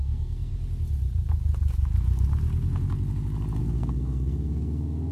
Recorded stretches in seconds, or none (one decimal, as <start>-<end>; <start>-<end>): 0.5-3.6